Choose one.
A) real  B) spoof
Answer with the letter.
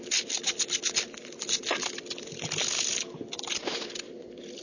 A